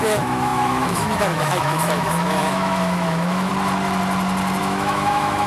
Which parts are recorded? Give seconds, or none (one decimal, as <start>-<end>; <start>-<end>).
3.5-4.6